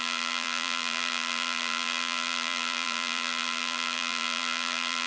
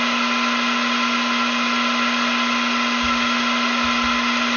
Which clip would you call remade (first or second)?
first